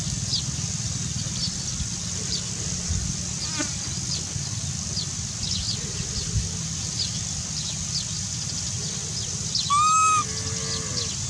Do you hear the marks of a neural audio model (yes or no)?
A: no